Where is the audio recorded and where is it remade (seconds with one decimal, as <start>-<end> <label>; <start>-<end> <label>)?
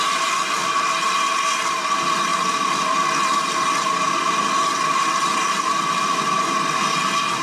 0.0-7.4 recorded